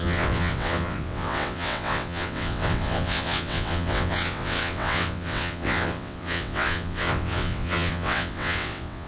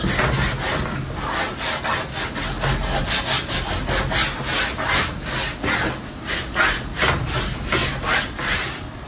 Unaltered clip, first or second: second